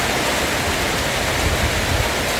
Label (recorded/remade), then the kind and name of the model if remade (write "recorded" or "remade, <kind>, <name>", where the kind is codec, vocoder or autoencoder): recorded